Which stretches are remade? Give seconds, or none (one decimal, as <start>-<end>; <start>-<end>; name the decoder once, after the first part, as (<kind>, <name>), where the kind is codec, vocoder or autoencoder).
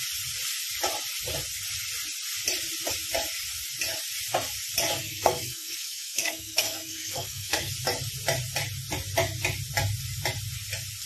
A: 5.0-7.7 (codec, SNAC)